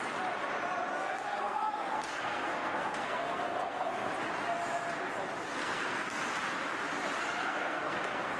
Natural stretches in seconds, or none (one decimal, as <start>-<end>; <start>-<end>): 0.0-0.9; 4.1-5.6; 6.2-7.4